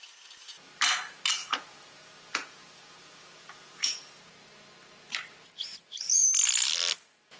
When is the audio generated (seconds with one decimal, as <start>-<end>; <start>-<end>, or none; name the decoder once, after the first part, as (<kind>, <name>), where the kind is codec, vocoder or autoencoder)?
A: 1.4-4.3 (vocoder, Vocos)